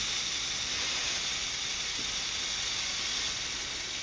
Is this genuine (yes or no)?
yes